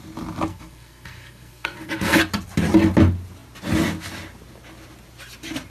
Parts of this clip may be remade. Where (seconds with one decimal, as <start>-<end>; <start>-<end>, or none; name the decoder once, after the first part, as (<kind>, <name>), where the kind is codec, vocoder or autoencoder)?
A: 0.5-2.2 (codec, SNAC)